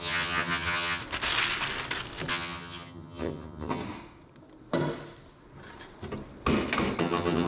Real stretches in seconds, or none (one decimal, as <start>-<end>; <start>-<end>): 1.0-2.3; 3.8-7.0